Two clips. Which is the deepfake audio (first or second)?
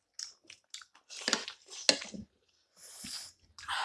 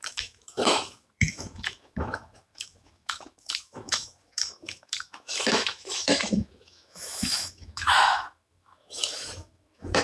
second